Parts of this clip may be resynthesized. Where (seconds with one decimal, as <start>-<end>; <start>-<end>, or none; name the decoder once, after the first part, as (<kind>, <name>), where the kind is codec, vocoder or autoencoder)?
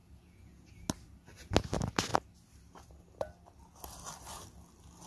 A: 0.0-0.7 (vocoder, Vocos)